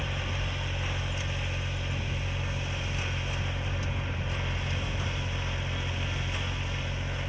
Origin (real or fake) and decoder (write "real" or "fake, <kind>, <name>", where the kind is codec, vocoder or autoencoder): real